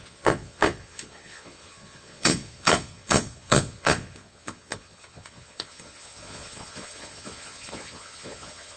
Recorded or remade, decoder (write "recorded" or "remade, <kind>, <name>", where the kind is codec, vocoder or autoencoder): remade, vocoder, Vocos